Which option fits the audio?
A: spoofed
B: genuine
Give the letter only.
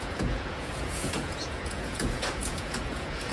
A